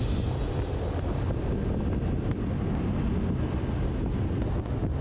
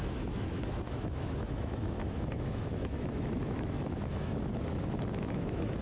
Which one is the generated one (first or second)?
second